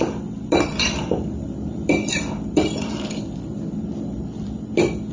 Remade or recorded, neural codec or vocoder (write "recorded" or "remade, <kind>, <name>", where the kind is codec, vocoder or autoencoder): remade, vocoder, BigVGAN v2